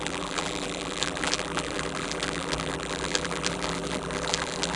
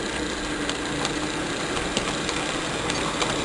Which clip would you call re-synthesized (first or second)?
first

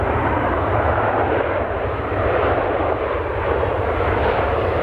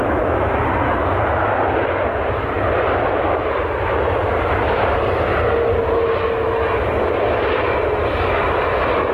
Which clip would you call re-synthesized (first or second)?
first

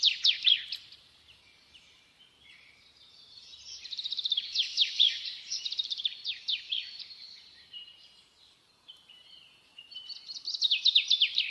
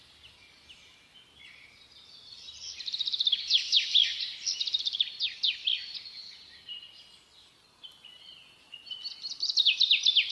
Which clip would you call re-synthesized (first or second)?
first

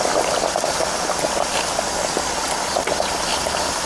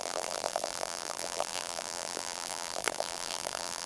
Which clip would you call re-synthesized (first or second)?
second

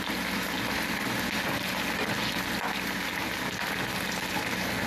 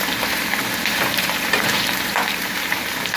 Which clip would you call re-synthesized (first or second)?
second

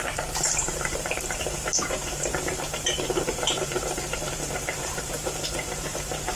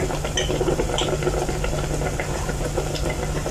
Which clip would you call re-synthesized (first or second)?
first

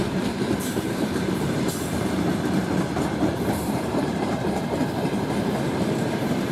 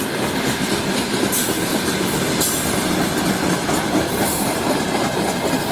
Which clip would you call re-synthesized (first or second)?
first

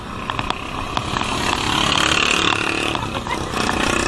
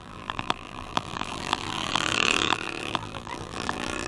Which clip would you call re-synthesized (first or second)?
second